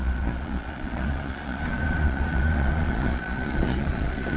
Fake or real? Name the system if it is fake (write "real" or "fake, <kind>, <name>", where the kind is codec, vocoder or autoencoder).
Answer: fake, vocoder, Vocos